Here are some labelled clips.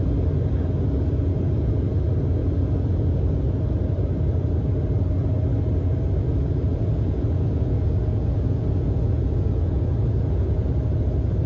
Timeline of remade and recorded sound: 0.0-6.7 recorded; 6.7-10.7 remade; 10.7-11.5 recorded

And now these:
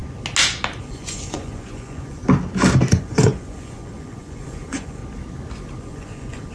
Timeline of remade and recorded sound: 0.0-0.8 recorded; 0.8-2.2 remade; 2.2-2.9 recorded; 2.9-5.0 remade; 5.0-5.8 recorded; 5.8-6.5 remade

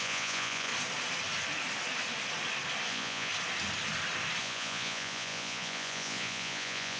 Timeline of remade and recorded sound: 0.0-0.7 remade; 0.7-2.9 recorded; 2.9-3.3 remade; 3.3-4.4 recorded; 4.4-7.0 remade

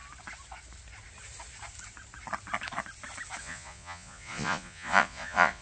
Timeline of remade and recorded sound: 0.0-3.4 recorded; 3.4-5.6 remade

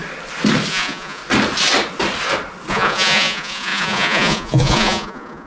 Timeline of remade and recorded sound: 0.0-0.7 recorded; 0.7-1.2 remade; 1.2-2.7 recorded; 2.7-5.5 remade